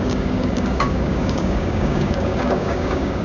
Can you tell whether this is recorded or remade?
remade